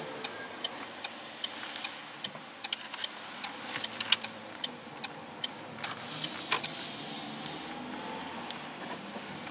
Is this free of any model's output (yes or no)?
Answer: yes